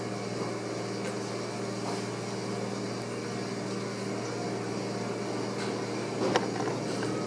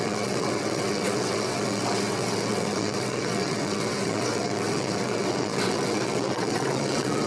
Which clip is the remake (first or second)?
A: second